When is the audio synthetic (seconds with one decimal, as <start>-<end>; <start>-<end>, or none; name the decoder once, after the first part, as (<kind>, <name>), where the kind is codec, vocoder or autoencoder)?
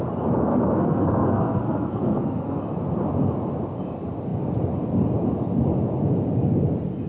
0.5-2.6 (codec, SNAC)